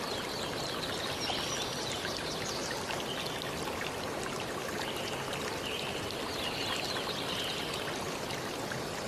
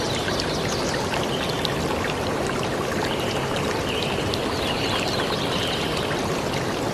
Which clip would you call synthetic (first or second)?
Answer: second